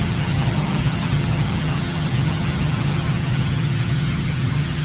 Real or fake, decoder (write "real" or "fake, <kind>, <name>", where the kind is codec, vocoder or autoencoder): fake, vocoder, HiFi-GAN